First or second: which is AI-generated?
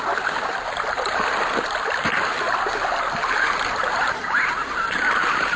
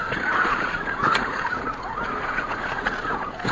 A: second